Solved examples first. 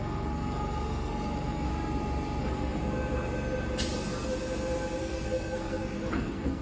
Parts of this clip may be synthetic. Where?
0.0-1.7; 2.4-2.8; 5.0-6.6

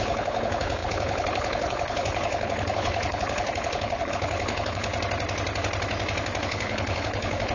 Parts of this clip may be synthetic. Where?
0.0-4.9; 6.4-7.5

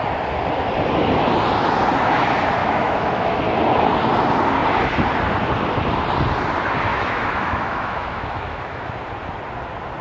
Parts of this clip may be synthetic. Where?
2.6-3.4; 6.9-8.9